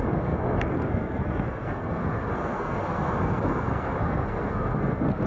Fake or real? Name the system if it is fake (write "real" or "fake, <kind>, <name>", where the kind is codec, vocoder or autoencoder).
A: fake, codec, SNAC